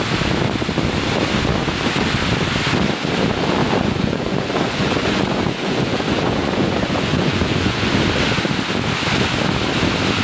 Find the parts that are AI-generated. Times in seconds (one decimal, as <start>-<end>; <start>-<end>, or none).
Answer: 3.6-7.9